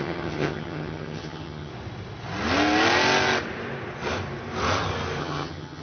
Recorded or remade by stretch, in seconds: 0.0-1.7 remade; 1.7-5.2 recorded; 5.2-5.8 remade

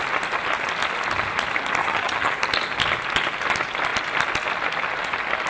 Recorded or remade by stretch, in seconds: 0.0-1.8 recorded; 1.8-2.3 remade; 2.3-5.5 recorded

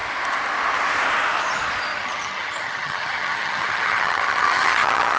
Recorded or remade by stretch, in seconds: 0.0-1.9 recorded; 1.9-5.2 remade

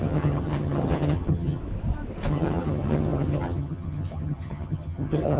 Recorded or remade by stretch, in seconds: 0.0-1.6 remade; 1.6-2.3 recorded; 2.3-5.4 remade

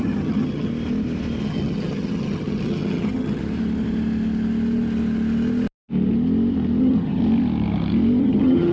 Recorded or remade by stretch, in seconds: 0.0-0.7 remade; 0.7-1.4 recorded; 1.4-3.4 remade; 3.4-6.8 recorded; 6.8-7.2 remade; 7.2-8.2 recorded; 8.2-8.7 remade